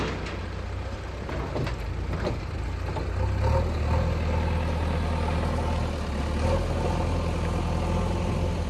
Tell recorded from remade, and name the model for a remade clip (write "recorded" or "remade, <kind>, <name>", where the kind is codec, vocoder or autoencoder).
recorded